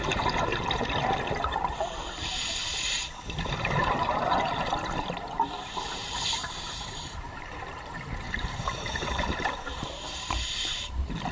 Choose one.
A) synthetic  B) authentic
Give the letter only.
A